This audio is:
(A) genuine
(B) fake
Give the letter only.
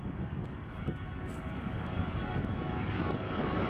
B